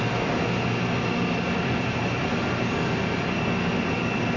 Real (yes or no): yes